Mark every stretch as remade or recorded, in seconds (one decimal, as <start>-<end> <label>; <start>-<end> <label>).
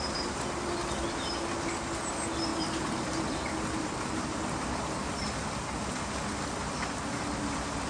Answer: 0.0-2.5 recorded; 2.5-5.7 remade; 5.7-7.9 recorded